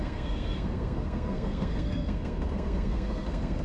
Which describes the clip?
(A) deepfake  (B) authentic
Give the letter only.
A